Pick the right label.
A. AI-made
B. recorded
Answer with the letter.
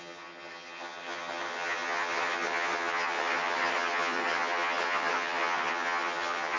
A